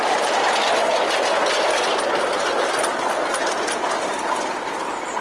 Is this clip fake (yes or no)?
no